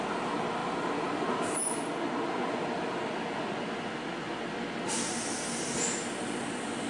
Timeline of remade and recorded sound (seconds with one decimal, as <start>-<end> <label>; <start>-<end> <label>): 0.0-6.9 recorded

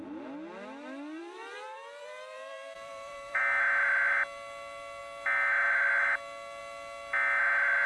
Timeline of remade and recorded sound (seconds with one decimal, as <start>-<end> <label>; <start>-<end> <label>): 0.0-1.2 recorded; 1.2-3.4 remade; 3.4-7.9 recorded